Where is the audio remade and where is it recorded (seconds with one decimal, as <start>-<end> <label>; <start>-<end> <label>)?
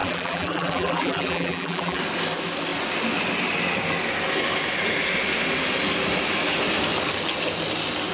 0.0-2.0 remade; 2.0-8.1 recorded